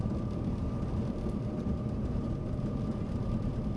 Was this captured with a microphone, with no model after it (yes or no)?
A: no